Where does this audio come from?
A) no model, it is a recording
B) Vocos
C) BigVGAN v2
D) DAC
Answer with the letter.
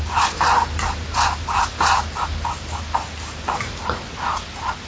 A